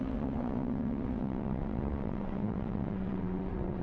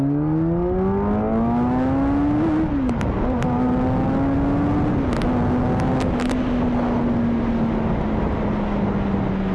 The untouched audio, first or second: second